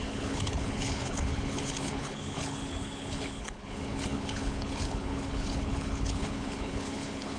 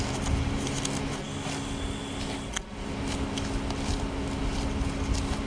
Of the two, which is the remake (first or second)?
first